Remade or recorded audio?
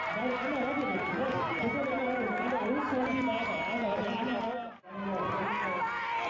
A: recorded